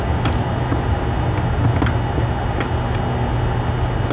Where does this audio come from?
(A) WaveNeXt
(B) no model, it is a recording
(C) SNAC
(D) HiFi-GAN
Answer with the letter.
B